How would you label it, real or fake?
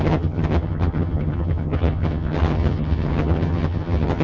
fake